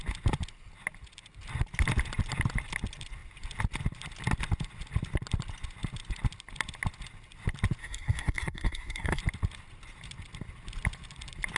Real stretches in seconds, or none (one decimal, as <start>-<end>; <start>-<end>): 0.0-7.8; 9.2-11.6